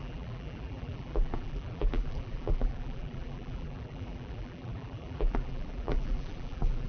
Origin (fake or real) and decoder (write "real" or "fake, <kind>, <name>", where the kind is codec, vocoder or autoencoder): fake, vocoder, BigVGAN v2